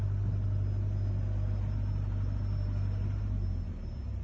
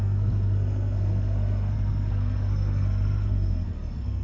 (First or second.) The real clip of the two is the first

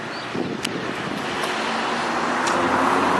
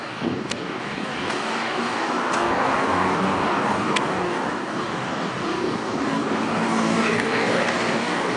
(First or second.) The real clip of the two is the first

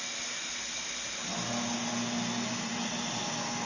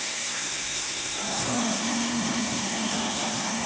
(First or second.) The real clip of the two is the first